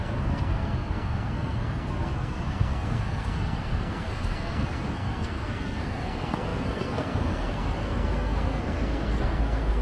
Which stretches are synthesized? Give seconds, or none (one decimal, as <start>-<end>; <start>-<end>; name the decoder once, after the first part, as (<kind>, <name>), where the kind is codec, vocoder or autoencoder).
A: 0.0-9.8 (codec, SNAC)